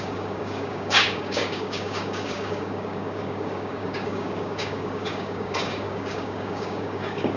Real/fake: fake